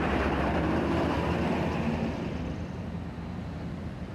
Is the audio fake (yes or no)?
yes